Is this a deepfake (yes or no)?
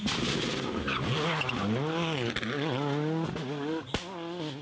no